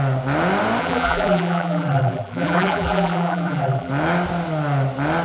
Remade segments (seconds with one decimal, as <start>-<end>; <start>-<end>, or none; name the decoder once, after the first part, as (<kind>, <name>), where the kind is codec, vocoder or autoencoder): 0.8-3.9 (vocoder, BigVGAN v2)